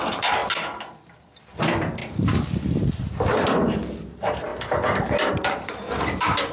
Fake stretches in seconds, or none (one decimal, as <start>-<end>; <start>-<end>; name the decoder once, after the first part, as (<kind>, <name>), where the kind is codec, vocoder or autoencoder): 0.0-0.4 (vocoder, BigVGAN v2); 1.2-2.0; 3.3-4.5; 5.3-6.5